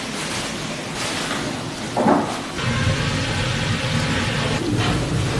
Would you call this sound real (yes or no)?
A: yes